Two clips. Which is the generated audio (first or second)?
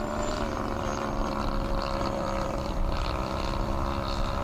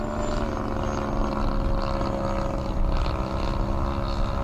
first